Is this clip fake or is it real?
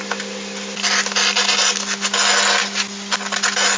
real